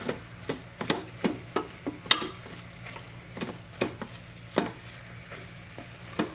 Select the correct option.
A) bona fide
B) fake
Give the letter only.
A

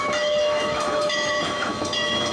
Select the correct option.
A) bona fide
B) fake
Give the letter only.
B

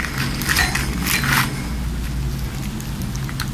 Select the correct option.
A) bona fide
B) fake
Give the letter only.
A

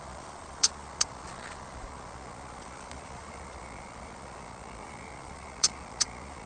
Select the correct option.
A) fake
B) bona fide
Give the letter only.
A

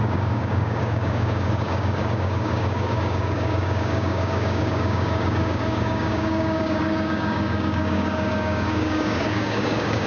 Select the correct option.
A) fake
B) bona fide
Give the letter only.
A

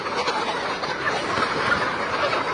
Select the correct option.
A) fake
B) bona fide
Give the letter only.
B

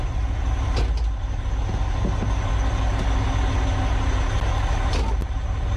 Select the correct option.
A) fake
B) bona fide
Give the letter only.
B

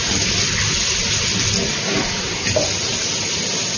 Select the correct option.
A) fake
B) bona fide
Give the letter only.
B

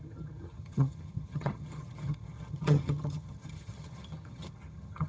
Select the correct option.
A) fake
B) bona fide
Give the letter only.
A